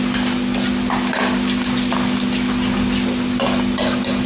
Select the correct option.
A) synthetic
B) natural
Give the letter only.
B